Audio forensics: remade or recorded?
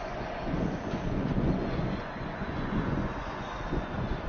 remade